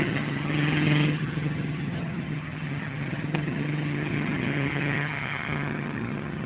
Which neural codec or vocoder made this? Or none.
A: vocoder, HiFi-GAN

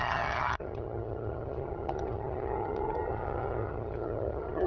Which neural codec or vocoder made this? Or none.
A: vocoder, HiFi-GAN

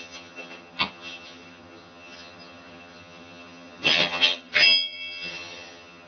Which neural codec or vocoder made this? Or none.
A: vocoder, HiFi-GAN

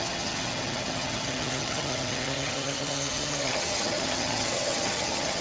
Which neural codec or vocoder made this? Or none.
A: vocoder, HiFi-GAN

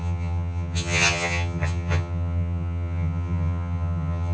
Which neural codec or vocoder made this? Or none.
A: vocoder, HiFi-GAN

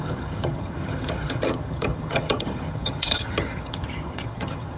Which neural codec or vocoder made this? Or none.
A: vocoder, HiFi-GAN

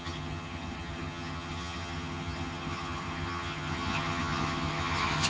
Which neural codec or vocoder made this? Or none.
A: vocoder, HiFi-GAN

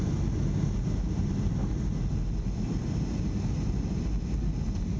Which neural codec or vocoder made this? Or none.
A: none